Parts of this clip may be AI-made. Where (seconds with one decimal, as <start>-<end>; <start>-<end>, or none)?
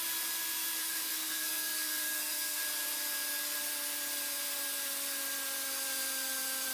0.8-2.6